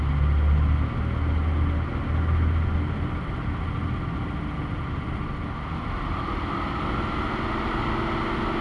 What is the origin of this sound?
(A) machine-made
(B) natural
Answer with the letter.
B